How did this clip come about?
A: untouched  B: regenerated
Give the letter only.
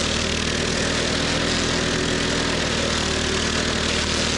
A